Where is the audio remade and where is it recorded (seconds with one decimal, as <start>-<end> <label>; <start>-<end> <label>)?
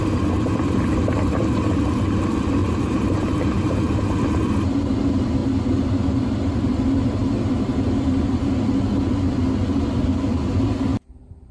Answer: 0.0-2.6 recorded; 2.6-4.2 remade; 4.2-11.5 recorded